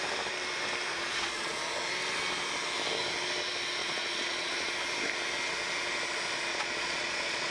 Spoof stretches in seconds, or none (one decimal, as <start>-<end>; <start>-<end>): 0.9-1.6; 3.8-4.7; 6.5-7.5